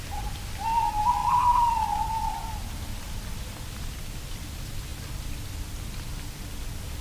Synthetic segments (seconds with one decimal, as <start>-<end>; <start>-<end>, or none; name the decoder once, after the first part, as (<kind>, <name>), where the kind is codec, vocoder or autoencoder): none